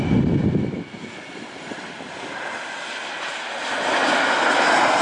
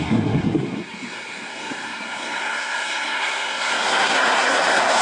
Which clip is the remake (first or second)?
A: second